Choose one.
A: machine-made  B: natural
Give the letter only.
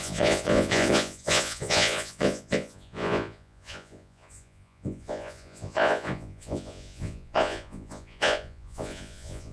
A